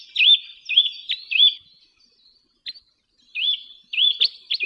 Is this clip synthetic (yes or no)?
no